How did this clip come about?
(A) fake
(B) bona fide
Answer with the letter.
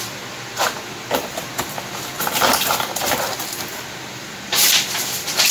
A